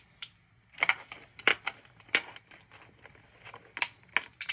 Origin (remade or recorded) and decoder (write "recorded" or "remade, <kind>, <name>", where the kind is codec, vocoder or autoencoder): recorded